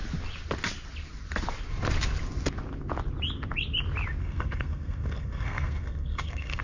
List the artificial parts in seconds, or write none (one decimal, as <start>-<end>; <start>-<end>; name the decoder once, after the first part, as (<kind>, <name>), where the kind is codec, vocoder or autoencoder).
4.2-6.6 (codec, SNAC)